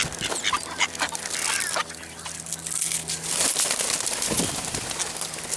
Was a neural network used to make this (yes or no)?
no